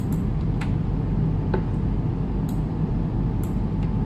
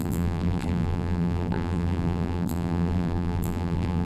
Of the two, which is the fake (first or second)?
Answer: second